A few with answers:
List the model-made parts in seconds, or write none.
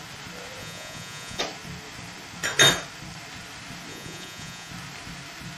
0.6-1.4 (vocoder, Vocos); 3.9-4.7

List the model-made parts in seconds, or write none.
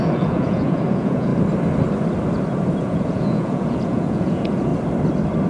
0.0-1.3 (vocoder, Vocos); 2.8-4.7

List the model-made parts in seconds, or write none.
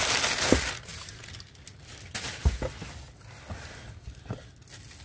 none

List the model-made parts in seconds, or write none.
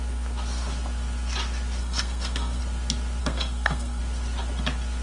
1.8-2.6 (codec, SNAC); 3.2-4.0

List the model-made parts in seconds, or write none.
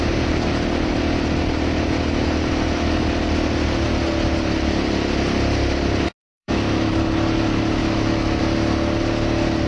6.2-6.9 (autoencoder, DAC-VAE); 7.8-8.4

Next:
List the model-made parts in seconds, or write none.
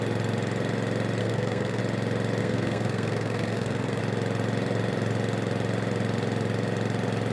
1.2-1.8 (codec, SNAC); 2.4-4.0